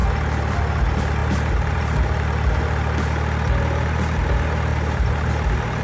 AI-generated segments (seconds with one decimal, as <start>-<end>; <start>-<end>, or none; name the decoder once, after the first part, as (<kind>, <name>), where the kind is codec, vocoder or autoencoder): 1.2-1.8 (vocoder, BigVGAN v2); 4.7-5.3